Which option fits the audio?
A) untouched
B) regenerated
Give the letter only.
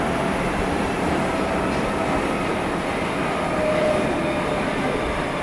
A